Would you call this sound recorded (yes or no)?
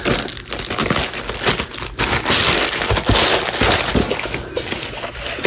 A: yes